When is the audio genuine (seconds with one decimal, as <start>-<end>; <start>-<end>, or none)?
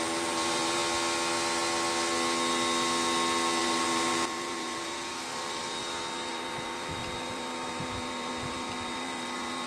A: 0.8-3.6; 5.8-6.3